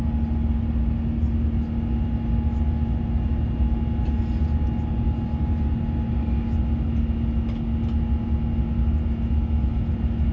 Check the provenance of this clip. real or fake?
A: real